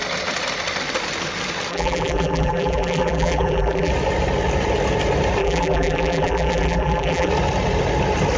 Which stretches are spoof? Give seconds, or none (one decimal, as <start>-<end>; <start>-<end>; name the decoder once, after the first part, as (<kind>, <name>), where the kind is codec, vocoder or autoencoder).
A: 1.7-3.9 (vocoder, BigVGAN v2); 5.4-7.3